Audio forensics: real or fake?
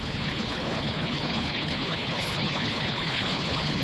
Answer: fake